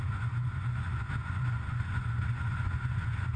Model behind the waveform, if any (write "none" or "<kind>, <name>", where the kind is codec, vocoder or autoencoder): vocoder, Vocos